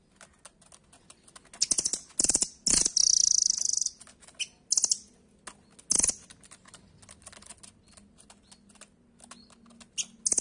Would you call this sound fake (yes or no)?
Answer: no